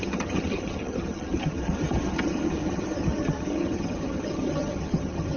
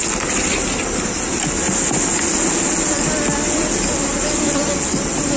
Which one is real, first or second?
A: second